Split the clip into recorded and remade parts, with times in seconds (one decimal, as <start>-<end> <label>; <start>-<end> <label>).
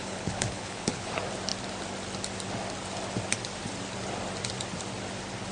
0.0-1.1 remade; 1.1-5.5 recorded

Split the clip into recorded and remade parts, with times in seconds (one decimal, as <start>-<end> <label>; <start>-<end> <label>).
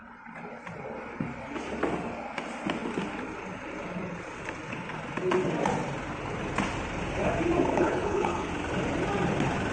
0.0-7.7 recorded; 7.7-8.5 remade; 8.5-9.7 recorded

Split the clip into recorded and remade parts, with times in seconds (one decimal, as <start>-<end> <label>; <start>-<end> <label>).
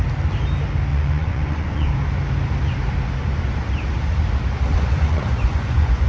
0.0-0.9 recorded; 0.9-1.9 remade; 1.9-4.7 recorded; 4.7-6.1 remade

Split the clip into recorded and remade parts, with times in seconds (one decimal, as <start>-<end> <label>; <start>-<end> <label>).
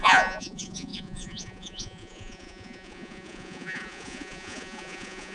0.0-5.3 remade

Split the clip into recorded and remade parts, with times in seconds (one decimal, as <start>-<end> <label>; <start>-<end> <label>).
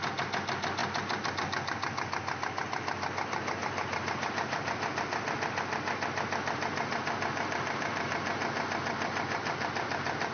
0.0-10.3 recorded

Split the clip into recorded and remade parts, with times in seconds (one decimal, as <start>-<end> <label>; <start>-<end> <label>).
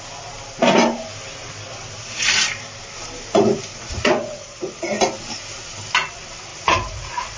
0.0-3.7 recorded; 3.7-4.8 remade; 4.8-6.5 recorded; 6.5-7.4 remade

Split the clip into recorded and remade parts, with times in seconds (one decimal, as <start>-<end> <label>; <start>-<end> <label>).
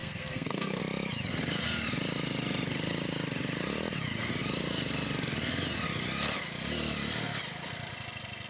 0.0-0.8 remade; 0.8-8.5 recorded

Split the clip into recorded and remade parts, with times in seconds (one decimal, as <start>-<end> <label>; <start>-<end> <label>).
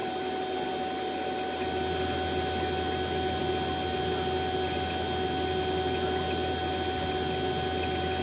0.0-8.2 recorded